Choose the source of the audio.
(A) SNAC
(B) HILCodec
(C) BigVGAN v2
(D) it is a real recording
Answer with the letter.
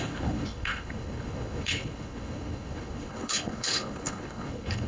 B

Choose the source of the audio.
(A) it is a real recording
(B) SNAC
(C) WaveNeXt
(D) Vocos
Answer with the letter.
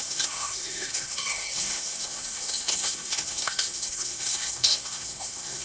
B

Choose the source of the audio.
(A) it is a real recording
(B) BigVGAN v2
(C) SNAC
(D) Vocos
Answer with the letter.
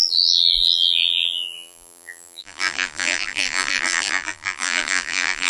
B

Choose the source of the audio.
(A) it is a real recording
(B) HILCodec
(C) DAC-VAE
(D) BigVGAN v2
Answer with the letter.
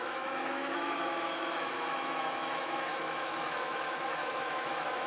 C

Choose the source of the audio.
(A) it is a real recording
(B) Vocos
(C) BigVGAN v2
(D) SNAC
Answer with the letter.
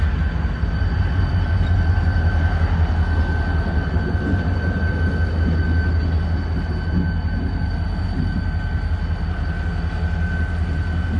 A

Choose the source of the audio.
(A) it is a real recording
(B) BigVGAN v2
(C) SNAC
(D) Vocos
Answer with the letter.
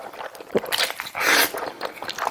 B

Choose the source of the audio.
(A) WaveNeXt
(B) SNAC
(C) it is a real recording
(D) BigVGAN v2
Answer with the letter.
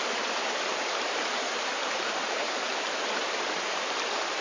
D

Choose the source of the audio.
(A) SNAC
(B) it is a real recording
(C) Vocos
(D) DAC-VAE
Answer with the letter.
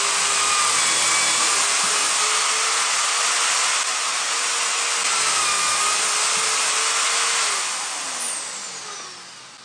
B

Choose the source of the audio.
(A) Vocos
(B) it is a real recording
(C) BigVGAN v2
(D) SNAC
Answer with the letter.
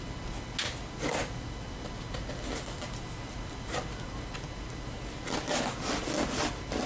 B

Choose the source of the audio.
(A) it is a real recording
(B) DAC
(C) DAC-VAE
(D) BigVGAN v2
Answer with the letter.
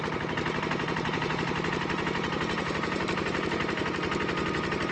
D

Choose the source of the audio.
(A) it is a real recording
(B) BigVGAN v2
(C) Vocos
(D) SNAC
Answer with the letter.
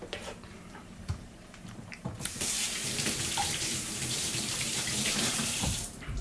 B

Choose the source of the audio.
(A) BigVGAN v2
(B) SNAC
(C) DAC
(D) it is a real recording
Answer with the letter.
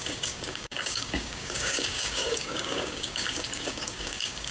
C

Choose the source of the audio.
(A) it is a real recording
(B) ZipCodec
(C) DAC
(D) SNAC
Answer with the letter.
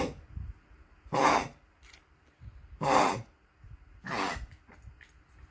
A